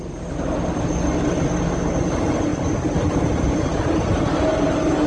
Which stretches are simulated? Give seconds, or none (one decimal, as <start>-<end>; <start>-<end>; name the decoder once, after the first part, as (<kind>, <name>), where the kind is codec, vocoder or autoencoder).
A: none